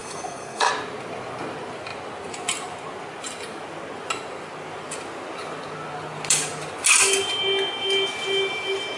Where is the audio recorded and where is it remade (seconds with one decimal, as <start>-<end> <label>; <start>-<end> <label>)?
0.0-0.7 remade; 0.7-9.0 recorded